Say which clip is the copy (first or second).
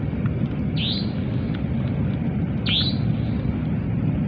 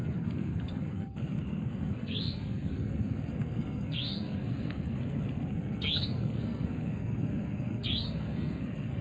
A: second